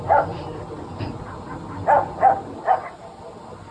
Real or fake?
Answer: real